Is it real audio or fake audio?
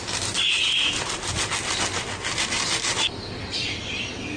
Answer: real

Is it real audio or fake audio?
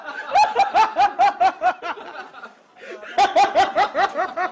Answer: real